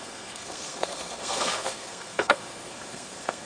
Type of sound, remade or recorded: remade